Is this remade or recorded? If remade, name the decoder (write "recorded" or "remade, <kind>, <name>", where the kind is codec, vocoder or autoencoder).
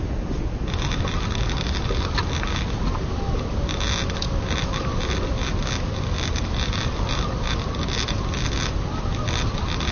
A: recorded